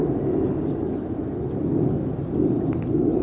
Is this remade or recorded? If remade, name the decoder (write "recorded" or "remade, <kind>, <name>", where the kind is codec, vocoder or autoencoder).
recorded